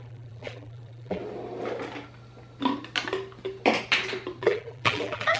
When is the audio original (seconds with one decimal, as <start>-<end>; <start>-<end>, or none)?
1.2-4.4